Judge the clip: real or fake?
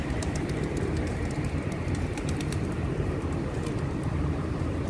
fake